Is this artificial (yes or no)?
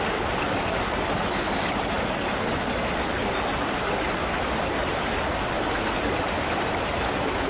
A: no